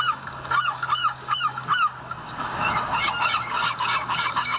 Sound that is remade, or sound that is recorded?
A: remade